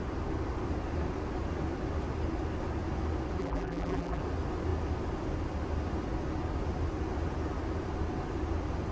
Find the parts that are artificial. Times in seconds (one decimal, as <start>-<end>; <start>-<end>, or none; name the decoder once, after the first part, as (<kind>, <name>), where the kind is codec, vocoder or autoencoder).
3.4-4.2 (vocoder, BigVGAN v2)